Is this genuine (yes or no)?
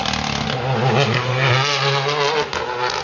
yes